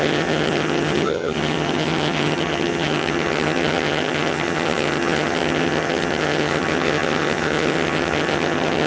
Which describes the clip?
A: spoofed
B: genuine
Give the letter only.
A